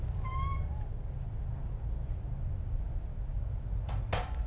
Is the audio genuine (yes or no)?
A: yes